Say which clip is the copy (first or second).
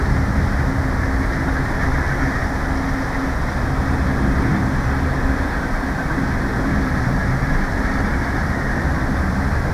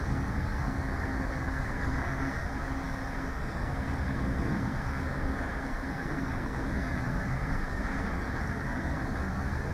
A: second